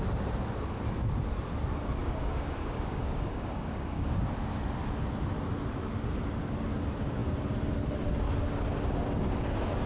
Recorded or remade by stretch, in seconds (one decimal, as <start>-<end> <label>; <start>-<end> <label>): 0.0-2.0 recorded; 2.0-4.3 remade; 4.3-9.9 recorded